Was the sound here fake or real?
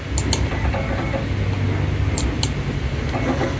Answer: real